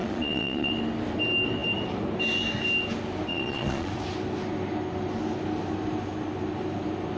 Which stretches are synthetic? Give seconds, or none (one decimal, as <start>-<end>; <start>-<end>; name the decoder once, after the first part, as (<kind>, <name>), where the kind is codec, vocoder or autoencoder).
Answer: 0.0-0.7 (vocoder, Vocos); 3.3-3.9